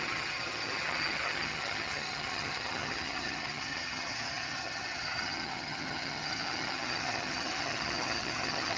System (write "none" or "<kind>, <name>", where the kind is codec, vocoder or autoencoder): vocoder, HiFi-GAN